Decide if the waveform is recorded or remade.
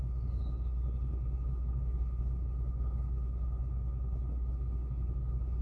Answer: remade